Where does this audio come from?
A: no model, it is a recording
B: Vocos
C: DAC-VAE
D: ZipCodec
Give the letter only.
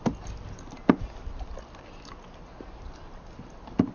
A